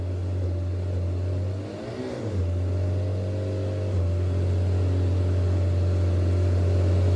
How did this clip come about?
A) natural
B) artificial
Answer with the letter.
A